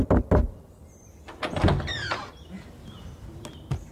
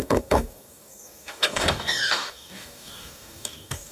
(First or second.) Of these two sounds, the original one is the first